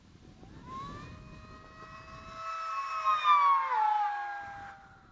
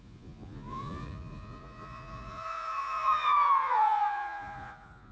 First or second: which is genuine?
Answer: first